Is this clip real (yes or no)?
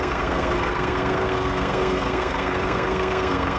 no